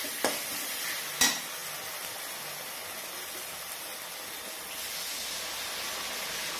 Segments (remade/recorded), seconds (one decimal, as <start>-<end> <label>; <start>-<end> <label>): 0.0-6.6 recorded